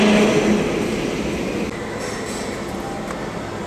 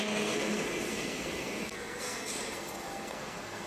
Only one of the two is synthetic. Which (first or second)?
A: second